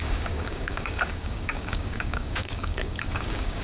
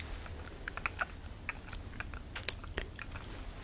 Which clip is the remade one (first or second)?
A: first